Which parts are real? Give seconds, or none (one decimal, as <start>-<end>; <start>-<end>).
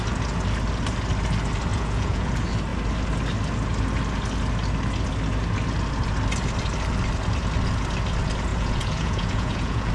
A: 0.0-1.7; 2.3-8.5